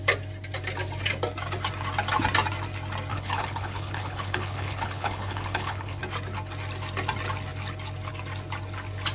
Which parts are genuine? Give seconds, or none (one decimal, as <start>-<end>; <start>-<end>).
0.0-3.1; 6.0-9.1